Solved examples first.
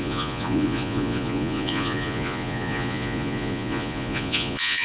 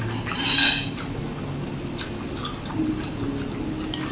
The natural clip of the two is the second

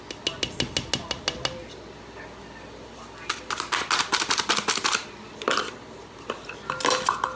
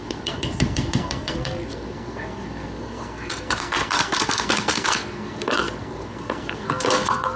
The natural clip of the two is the first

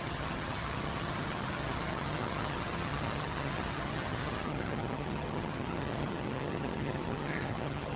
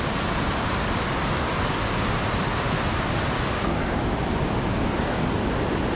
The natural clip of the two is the second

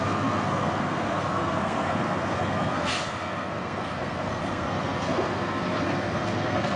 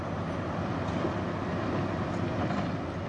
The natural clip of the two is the second